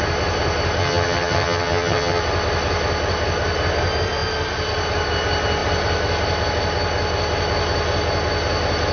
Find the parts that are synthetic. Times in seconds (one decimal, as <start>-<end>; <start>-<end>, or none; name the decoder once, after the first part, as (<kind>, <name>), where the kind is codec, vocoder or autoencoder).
0.8-2.2 (vocoder, HiFi-GAN)